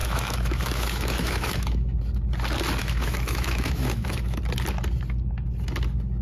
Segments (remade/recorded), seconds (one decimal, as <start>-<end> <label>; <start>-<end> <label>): 0.0-2.0 remade; 2.0-2.8 recorded; 2.8-4.4 remade; 4.4-6.2 recorded